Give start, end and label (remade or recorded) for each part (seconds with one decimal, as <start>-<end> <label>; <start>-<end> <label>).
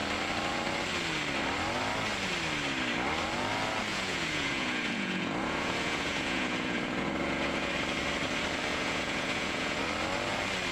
0.0-3.9 recorded; 3.9-7.7 remade; 7.7-8.7 recorded; 8.7-9.8 remade; 9.8-10.7 recorded